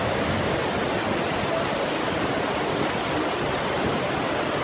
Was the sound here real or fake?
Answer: real